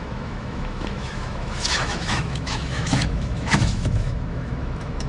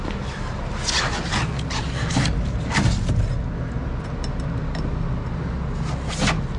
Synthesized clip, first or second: first